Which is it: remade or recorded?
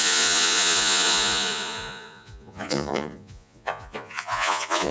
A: remade